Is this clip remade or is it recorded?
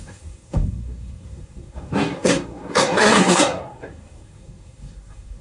remade